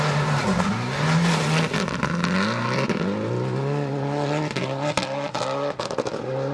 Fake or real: real